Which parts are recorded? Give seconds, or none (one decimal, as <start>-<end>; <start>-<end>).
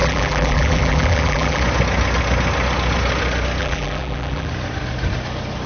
1.6-3.6; 4.5-5.7